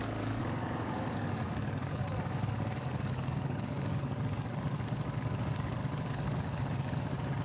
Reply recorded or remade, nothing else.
remade